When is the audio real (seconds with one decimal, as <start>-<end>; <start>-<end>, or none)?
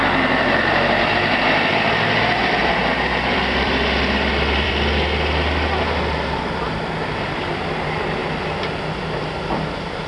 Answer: 8.2-9.2